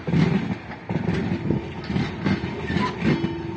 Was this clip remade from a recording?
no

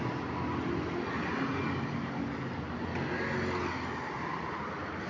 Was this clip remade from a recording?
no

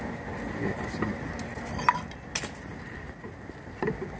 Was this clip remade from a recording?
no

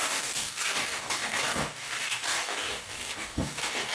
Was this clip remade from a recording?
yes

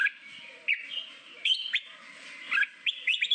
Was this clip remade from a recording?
yes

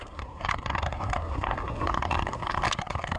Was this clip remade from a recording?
yes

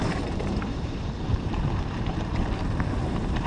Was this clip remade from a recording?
yes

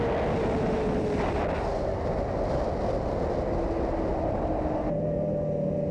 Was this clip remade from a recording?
no